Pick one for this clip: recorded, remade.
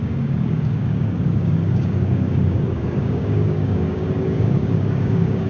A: remade